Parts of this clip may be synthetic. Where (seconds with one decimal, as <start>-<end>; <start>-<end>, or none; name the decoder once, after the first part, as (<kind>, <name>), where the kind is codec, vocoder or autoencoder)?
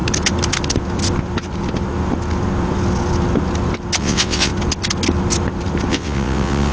4.0-4.5 (vocoder, WaveNeXt); 5.9-6.7